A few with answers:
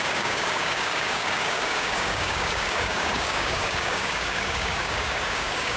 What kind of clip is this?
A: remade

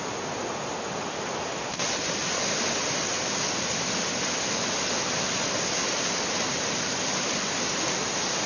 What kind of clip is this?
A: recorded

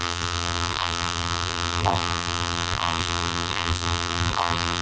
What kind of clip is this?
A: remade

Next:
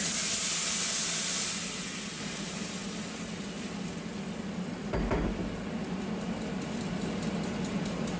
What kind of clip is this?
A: recorded